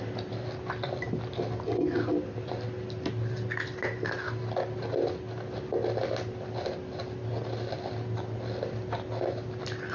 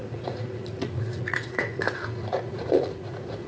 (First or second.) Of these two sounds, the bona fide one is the first